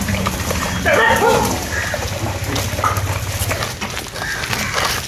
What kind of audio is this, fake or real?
real